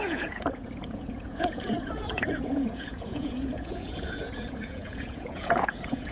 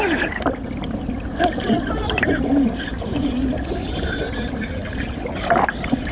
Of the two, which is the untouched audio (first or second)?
second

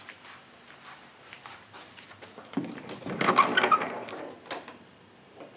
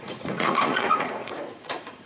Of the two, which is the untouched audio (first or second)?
first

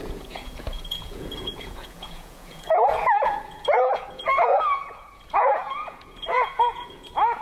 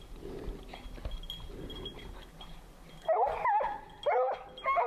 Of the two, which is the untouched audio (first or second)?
second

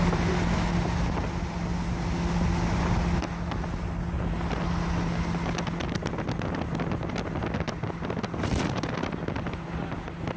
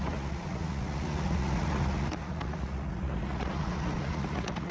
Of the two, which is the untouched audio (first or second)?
first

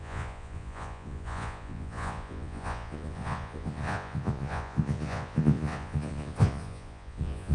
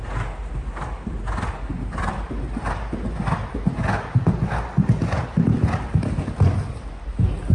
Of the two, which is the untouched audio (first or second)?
second